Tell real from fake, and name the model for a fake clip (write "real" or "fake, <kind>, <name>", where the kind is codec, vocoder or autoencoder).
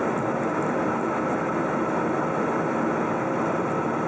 real